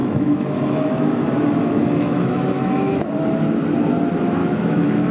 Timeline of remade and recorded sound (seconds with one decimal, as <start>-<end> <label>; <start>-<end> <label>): 0.0-3.1 remade; 3.1-4.4 recorded; 4.4-5.1 remade